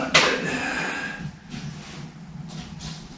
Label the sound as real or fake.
real